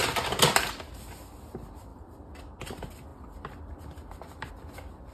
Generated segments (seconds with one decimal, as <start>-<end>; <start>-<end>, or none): 1.9-2.4